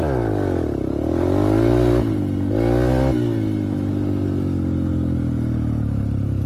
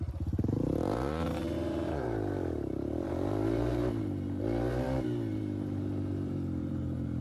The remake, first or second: second